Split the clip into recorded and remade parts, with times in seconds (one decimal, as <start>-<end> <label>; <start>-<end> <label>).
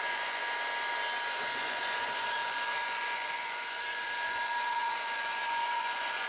0.0-0.4 remade; 0.4-1.6 recorded; 1.6-6.3 remade